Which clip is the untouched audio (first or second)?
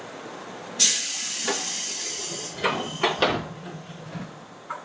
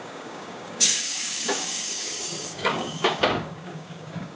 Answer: first